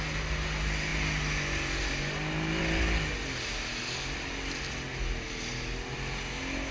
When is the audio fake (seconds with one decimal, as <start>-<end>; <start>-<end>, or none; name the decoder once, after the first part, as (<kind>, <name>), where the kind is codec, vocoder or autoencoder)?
none